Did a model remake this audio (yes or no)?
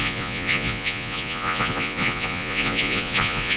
yes